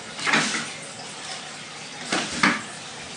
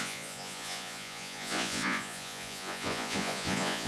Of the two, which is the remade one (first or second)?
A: second